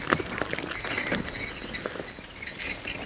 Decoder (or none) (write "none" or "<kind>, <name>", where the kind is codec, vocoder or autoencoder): none